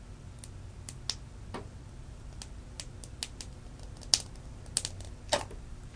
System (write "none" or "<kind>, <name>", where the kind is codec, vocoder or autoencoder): none